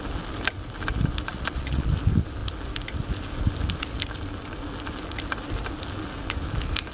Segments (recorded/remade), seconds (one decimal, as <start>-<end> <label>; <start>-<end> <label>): 0.0-1.3 recorded; 1.3-1.9 remade; 1.9-6.9 recorded